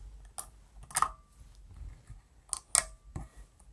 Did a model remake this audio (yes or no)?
no